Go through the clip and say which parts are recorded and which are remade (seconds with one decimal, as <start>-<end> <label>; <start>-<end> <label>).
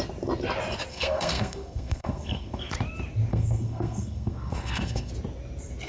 0.0-0.9 recorded; 0.9-2.7 remade; 2.7-3.3 recorded; 3.3-5.1 remade; 5.1-5.9 recorded